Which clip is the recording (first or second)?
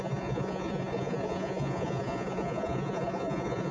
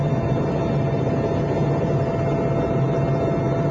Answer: second